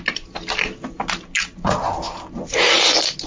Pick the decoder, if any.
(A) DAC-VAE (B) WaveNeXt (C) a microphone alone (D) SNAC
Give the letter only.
C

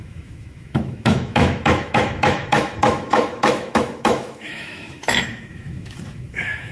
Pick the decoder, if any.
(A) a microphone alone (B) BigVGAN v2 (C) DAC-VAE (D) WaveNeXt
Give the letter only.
C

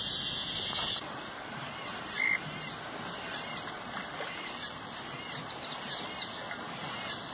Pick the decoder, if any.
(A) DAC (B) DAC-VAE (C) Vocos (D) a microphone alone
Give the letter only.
D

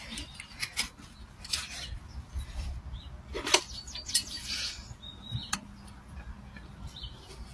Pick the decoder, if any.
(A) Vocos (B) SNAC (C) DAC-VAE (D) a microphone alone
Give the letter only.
D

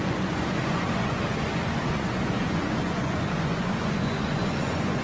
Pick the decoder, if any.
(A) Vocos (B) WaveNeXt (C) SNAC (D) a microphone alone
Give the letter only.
A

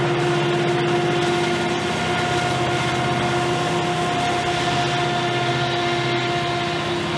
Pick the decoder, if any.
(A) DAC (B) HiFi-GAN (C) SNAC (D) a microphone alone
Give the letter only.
D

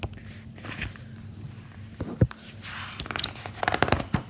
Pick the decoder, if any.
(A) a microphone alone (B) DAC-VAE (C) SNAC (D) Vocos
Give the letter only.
A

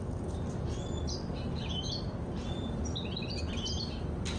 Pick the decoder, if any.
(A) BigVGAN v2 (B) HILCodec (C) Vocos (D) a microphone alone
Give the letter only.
D